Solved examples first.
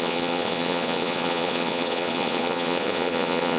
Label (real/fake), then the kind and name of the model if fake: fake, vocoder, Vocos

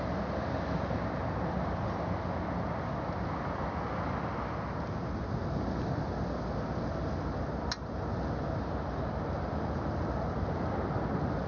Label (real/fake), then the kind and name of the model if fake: real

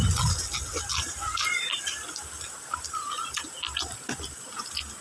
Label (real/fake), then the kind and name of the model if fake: real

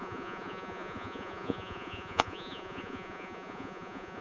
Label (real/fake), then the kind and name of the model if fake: fake, vocoder, Vocos